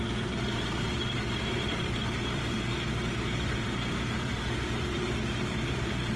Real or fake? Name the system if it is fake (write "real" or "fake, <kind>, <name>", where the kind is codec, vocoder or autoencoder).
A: fake, vocoder, BigVGAN v2